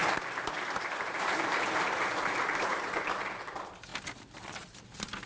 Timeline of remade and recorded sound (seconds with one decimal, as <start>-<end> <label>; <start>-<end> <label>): 0.0-3.0 remade; 3.0-5.3 recorded

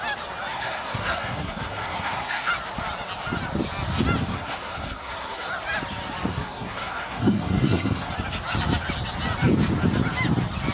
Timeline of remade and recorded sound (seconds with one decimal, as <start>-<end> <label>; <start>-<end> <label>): 0.0-0.5 recorded; 0.5-2.5 remade; 2.5-4.3 recorded; 4.3-5.5 remade; 5.5-6.3 recorded; 6.3-8.1 remade; 8.1-10.7 recorded

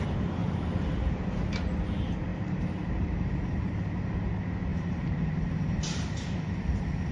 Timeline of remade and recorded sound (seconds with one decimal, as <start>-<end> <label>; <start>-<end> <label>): 0.0-0.4 recorded; 0.4-1.5 remade; 1.5-2.3 recorded; 2.3-3.4 remade; 3.4-4.7 recorded; 4.7-7.1 remade

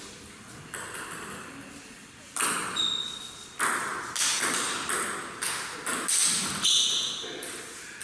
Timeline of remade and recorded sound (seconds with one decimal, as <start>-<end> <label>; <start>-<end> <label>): 0.0-8.0 recorded

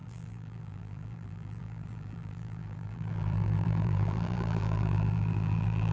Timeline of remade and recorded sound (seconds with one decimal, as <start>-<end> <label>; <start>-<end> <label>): 0.0-5.9 remade